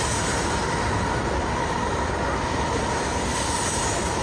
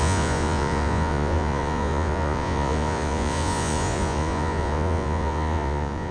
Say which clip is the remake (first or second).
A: second